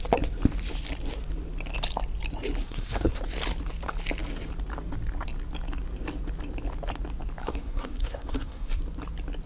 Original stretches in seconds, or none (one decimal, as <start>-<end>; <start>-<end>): 0.0-2.6; 3.2-7.4; 8.8-9.5